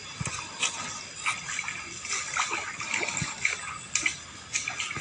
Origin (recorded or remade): recorded